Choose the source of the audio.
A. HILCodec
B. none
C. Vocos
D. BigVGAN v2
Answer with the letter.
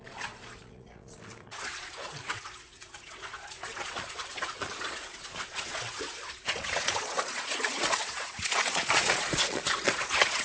C